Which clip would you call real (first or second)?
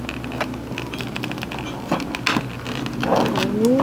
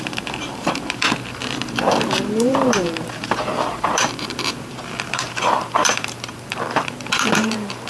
first